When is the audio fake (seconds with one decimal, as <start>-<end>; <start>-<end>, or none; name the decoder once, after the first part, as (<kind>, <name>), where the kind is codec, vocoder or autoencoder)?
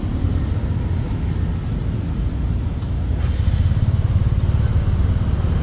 none